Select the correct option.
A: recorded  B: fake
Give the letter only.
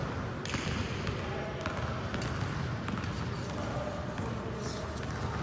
A